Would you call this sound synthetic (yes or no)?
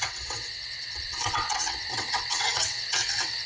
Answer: yes